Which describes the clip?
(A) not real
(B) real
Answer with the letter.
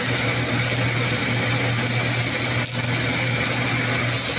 B